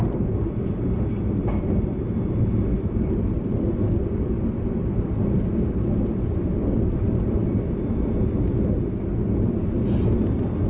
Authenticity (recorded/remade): recorded